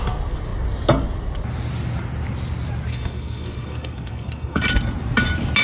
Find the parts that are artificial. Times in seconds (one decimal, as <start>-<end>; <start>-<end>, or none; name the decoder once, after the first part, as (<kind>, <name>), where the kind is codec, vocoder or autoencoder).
2.9-4.6 (codec, SNAC)